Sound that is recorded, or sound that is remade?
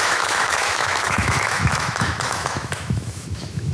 remade